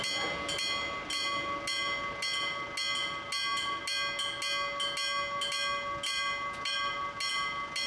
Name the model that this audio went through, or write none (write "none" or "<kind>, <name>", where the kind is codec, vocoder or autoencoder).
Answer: none